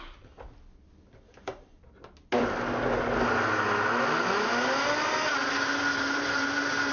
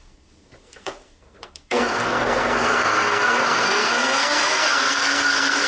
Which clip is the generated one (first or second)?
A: second